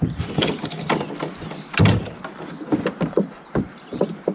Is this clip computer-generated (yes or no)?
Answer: no